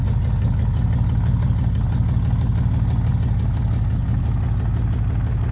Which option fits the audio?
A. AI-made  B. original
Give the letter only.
B